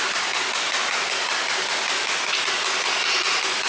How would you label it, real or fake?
real